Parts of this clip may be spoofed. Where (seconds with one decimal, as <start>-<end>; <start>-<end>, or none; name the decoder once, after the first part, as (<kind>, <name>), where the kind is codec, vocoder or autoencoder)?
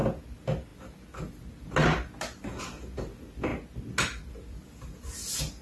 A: none